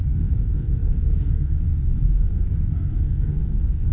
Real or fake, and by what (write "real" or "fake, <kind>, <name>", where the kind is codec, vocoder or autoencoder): fake, codec, SNAC